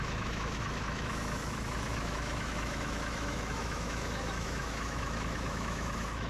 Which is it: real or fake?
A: fake